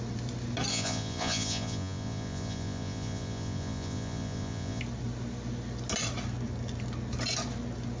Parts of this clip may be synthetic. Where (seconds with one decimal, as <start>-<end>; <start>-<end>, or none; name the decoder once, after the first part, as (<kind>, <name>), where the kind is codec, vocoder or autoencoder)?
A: 0.7-4.8 (vocoder, Vocos)